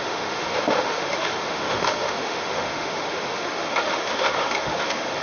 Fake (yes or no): yes